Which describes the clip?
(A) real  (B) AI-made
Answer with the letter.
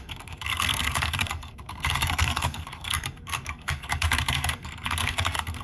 B